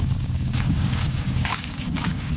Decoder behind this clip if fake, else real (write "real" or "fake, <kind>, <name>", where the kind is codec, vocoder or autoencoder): fake, codec, DAC